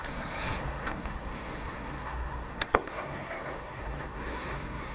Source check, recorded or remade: remade